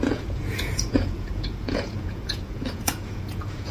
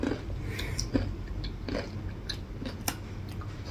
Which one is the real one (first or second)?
second